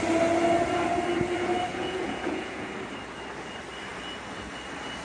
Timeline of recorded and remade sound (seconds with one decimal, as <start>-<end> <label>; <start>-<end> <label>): 0.0-1.7 recorded; 1.7-2.7 remade; 2.7-5.0 recorded